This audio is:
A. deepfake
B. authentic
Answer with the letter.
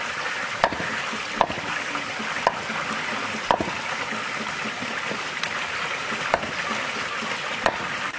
B